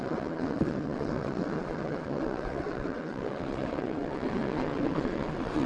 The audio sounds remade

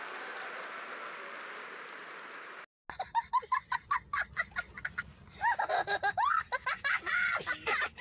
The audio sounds recorded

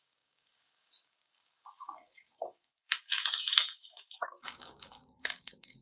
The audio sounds remade